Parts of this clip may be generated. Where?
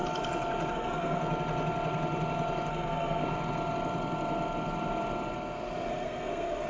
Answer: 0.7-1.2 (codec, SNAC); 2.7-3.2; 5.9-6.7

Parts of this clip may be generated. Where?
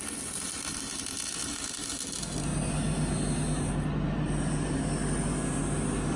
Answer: none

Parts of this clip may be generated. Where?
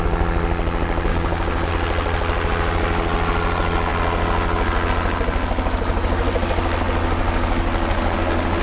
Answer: 1.1-1.7 (codec, DAC)